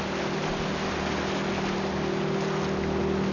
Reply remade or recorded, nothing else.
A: recorded